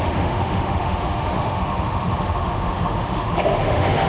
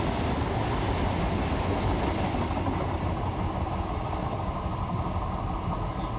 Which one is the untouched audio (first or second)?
second